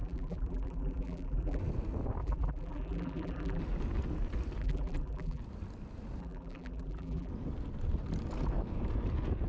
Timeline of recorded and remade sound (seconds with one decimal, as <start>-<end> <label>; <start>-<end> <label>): 0.0-1.6 remade; 1.6-2.2 recorded; 2.2-3.6 remade; 3.6-4.6 recorded; 4.6-5.4 remade; 5.4-6.2 recorded; 6.2-7.3 remade; 7.3-9.5 recorded